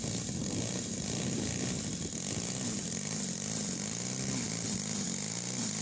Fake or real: real